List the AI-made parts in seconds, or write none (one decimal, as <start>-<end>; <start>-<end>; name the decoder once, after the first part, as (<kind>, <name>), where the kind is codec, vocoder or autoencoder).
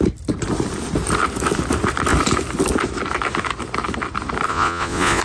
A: 4.5-5.2 (vocoder, Vocos)